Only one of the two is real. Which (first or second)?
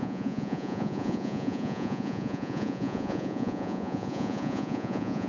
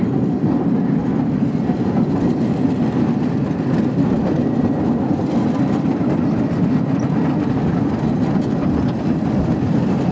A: second